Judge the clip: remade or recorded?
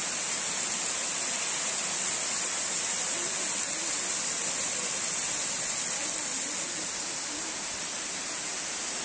recorded